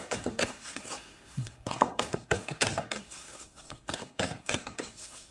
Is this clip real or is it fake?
fake